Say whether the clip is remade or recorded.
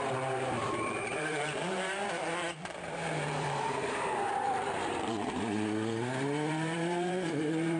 remade